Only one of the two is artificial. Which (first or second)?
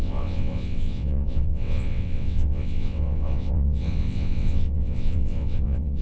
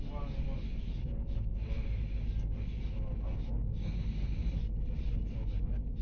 first